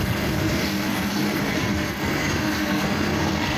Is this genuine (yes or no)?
no